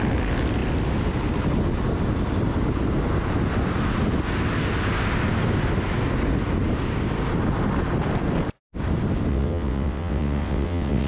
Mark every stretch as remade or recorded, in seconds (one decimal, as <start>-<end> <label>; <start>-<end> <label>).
0.0-9.3 recorded; 9.3-11.1 remade